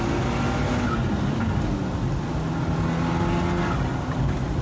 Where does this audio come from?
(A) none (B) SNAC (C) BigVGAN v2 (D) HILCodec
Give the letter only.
A